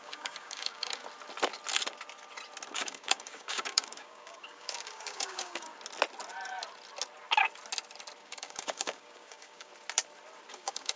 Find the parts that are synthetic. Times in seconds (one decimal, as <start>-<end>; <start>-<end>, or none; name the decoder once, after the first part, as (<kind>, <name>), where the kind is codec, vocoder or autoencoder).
0.0-1.0 (codec, DAC); 2.7-5.7; 8.2-9.7; 10.5-11.0